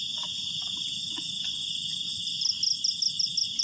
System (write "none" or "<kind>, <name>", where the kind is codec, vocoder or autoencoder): none